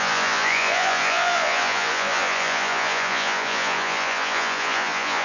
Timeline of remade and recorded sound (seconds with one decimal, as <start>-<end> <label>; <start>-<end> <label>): 0.0-5.2 remade

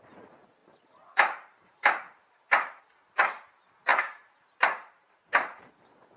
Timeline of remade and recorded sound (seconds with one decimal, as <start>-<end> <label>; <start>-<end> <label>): 0.0-0.6 recorded; 0.6-2.8 remade; 2.8-3.9 recorded; 3.9-5.6 remade; 5.6-6.2 recorded